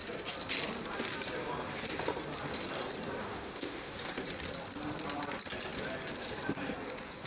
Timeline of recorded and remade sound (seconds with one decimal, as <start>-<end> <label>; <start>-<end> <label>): 0.0-3.2 recorded; 3.2-3.9 remade; 3.9-7.3 recorded